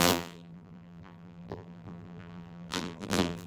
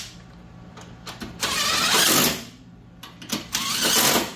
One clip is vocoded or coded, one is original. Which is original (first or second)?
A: second